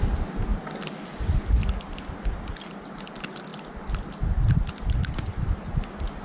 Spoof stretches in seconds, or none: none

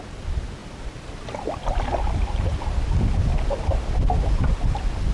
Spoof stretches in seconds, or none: none

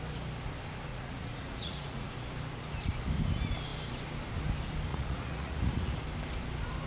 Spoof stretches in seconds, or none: 0.9-2.1 (vocoder, Vocos); 4.9-6.0

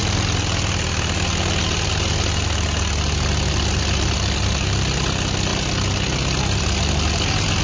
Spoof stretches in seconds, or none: none

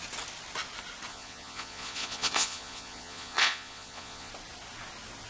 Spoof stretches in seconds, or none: 1.1-4.3 (vocoder, Vocos)

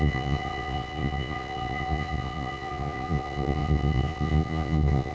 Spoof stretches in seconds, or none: 0.0-5.1 (vocoder, Vocos)